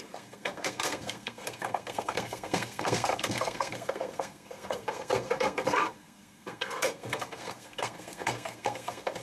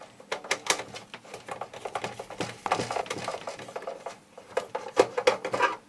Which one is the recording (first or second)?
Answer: second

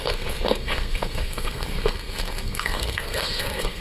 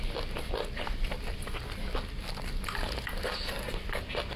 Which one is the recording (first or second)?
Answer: second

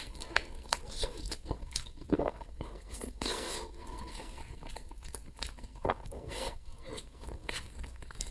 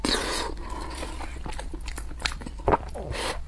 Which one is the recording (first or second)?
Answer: second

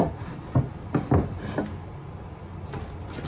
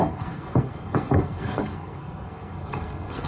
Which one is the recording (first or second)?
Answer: first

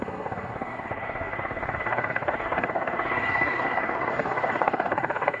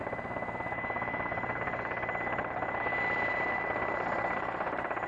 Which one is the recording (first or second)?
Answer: second